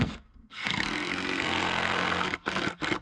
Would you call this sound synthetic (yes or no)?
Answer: yes